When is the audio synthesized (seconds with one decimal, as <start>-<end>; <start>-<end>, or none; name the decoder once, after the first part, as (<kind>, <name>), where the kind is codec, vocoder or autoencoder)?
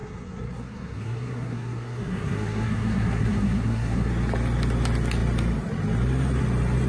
0.0-4.1 (codec, SNAC)